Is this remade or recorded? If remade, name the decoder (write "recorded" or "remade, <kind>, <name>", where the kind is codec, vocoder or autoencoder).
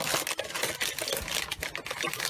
recorded